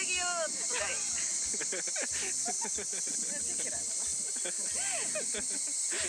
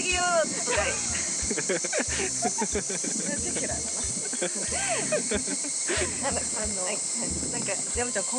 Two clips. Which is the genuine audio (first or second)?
first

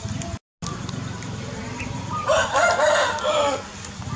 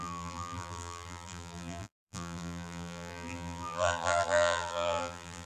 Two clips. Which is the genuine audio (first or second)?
first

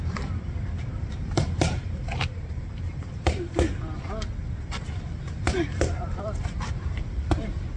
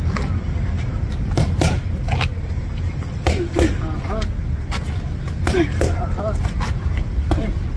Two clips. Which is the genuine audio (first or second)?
second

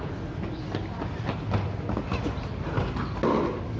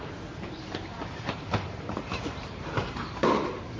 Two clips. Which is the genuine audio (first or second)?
first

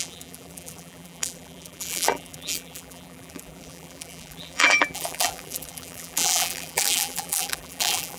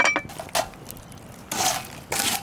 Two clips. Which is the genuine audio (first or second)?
second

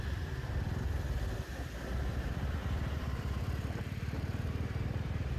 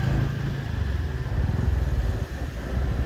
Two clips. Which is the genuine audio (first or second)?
second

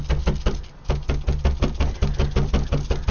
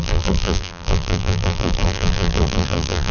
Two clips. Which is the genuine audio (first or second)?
first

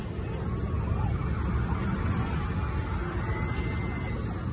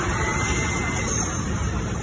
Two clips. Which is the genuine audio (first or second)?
first